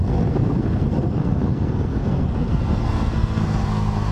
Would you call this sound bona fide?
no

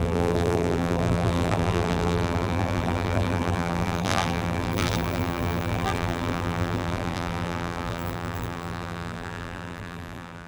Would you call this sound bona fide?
no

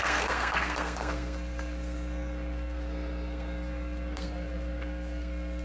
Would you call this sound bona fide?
no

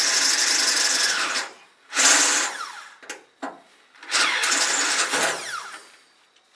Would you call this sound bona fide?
yes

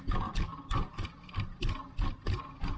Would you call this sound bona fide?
yes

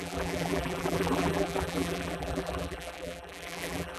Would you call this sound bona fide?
no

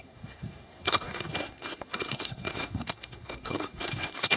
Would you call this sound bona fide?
no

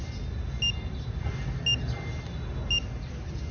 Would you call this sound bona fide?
yes